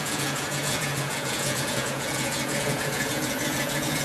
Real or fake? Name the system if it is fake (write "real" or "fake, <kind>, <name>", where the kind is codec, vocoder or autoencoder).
fake, vocoder, Vocos